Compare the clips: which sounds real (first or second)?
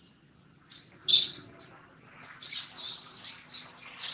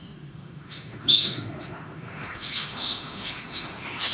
first